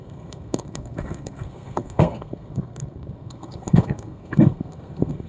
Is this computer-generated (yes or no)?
yes